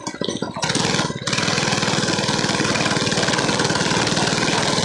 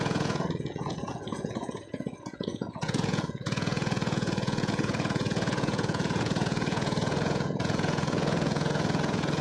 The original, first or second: first